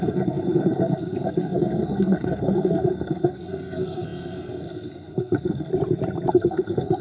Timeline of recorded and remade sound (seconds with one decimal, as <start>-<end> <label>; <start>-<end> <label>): 0.0-5.7 remade; 5.7-6.3 recorded; 6.3-7.0 remade